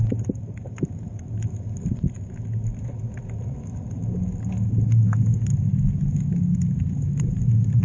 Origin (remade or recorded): recorded